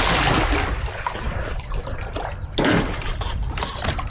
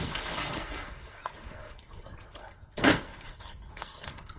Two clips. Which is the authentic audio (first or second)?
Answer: first